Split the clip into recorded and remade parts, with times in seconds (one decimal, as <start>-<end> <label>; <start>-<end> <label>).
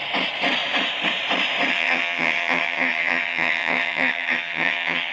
0.0-1.7 recorded; 1.7-5.1 remade